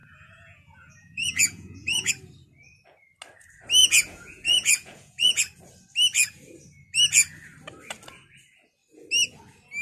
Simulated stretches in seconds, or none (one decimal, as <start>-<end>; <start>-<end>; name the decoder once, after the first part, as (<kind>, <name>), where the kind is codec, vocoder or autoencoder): 0.0-2.1 (vocoder, Vocos); 3.8-5.4